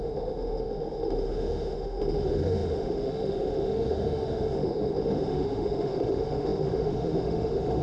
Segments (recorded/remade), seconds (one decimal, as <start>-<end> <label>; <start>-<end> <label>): 0.0-7.8 remade